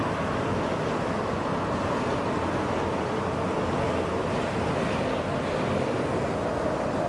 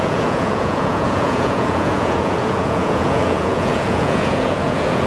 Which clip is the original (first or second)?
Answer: first